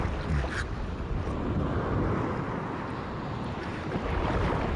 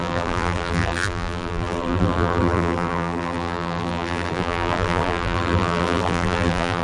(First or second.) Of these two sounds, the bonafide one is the first